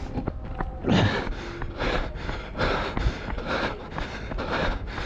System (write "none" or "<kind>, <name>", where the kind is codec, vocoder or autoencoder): none